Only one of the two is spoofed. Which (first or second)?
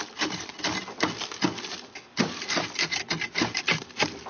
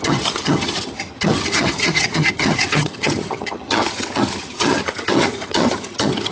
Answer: second